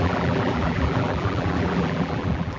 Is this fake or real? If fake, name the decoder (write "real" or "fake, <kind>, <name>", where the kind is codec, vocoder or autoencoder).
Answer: fake, vocoder, BigVGAN v2